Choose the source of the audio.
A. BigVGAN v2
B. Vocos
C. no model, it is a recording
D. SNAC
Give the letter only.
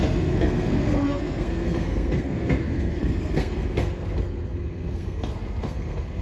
D